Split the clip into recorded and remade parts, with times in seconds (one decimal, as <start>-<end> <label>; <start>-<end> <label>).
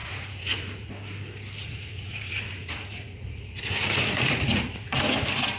0.0-0.9 remade; 0.9-1.6 recorded; 1.6-5.0 remade; 5.0-5.6 recorded